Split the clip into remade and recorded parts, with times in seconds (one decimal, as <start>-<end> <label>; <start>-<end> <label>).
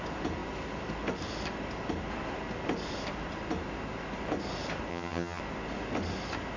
0.0-4.9 recorded; 4.9-5.4 remade; 5.4-6.6 recorded